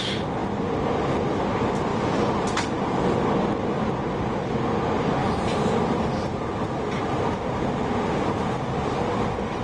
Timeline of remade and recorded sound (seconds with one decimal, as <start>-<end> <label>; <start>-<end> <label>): 0.0-5.2 recorded; 5.2-8.5 remade; 8.5-9.6 recorded